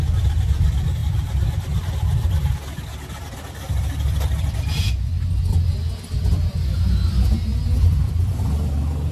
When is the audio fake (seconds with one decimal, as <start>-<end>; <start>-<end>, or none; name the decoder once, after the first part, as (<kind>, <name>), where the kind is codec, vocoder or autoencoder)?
none